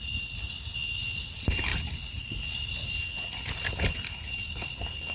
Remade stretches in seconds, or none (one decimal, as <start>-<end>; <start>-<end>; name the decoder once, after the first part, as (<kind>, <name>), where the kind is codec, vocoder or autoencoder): none

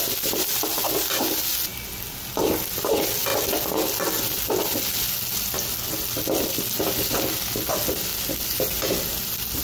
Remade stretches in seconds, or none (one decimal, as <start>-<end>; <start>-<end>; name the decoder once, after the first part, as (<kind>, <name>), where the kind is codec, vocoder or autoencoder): none

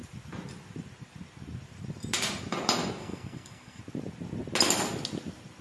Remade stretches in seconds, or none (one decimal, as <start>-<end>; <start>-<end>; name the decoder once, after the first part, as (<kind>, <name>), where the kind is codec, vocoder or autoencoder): 3.0-3.8 (codec, SNAC)

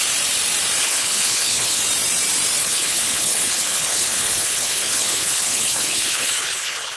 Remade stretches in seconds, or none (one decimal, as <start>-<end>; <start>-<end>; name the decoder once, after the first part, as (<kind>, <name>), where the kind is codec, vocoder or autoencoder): 0.8-1.8 (codec, HILCodec); 2.6-7.0

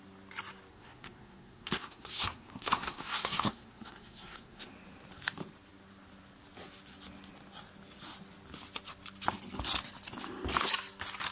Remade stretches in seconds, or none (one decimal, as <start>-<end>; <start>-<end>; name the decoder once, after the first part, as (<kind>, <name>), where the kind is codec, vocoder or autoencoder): 0.7-4.7 (codec, SNAC)

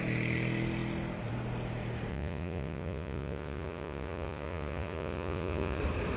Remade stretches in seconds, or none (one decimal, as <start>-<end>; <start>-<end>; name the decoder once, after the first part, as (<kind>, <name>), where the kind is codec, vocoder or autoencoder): 2.1-5.8 (vocoder, Vocos)